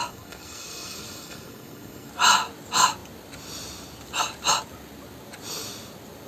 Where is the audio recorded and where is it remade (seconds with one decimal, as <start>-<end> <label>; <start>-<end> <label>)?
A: 0.0-2.1 remade; 2.1-6.3 recorded